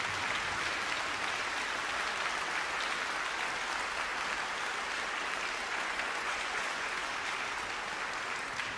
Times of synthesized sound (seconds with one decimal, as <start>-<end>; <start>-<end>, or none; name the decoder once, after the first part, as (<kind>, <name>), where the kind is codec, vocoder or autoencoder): 5.7-7.1 (vocoder, Vocos)